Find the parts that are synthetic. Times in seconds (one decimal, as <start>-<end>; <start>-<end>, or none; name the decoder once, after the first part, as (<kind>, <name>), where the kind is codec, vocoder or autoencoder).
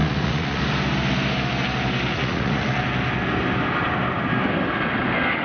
0.0-0.6 (vocoder, Vocos); 2.1-2.8